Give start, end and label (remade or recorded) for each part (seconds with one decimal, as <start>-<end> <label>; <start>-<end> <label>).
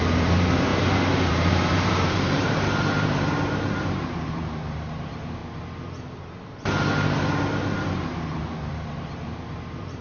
0.0-0.7 remade; 0.7-1.3 recorded; 1.3-5.4 remade; 5.4-8.3 recorded; 8.3-10.0 remade